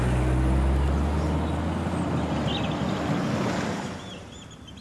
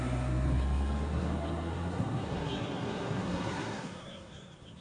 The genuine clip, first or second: first